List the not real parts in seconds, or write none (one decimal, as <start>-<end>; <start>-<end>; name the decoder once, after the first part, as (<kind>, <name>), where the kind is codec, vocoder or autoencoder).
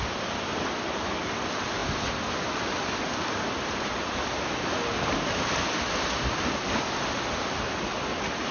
none